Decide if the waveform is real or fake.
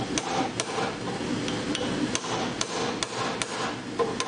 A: real